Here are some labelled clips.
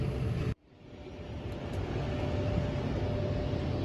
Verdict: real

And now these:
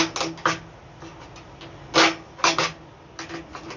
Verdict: real